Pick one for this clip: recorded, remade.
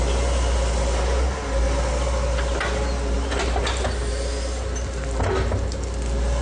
recorded